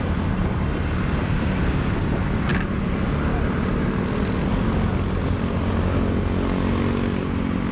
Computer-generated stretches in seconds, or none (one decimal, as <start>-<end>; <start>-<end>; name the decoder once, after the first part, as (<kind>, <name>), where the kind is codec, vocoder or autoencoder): none